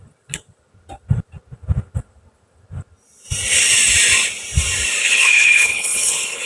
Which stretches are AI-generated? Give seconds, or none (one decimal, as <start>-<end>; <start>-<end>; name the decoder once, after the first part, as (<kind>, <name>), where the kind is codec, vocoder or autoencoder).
5.0-6.5 (codec, HILCodec)